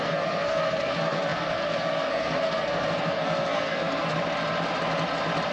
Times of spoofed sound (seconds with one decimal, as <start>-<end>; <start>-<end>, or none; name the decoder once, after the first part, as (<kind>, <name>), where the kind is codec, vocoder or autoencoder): 0.0-4.1 (codec, SNAC)